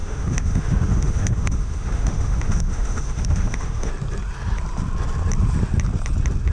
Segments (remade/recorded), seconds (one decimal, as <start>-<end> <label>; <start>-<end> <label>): 0.0-3.9 remade; 3.9-6.5 recorded